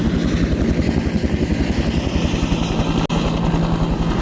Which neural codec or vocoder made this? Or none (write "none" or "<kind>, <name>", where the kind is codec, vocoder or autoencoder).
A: none